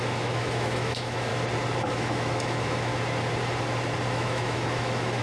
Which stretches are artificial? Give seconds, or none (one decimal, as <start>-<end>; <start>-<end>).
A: 0.0-1.3; 1.9-2.9; 4.1-5.2

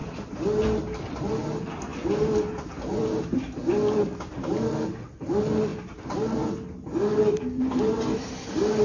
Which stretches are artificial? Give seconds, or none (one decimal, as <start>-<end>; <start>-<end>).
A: none

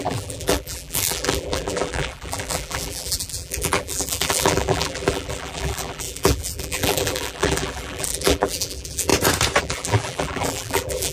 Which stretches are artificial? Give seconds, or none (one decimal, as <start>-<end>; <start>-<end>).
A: 0.0-9.1; 9.6-11.1